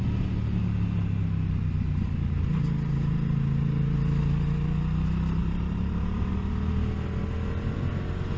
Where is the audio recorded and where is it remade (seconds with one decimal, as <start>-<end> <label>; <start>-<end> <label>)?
0.0-5.4 recorded; 5.4-6.3 remade; 6.3-8.4 recorded